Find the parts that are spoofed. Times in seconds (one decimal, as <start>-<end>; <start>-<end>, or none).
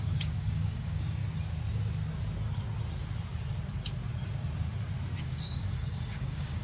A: 0.0-1.2; 5.2-6.6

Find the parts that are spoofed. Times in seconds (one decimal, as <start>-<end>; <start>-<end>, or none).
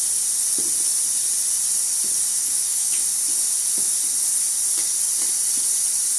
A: 2.3-3.0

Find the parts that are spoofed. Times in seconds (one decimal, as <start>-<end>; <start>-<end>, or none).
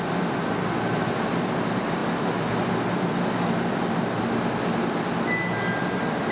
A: none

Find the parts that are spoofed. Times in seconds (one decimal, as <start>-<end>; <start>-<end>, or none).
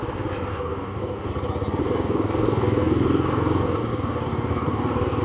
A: 0.5-1.3; 1.8-5.2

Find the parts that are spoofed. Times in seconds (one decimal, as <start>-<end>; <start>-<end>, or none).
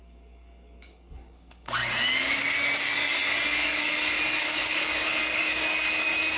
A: 0.0-1.8; 2.3-6.4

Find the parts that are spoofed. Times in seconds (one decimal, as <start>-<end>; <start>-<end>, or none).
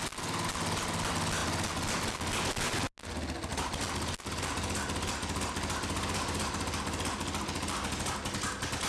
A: none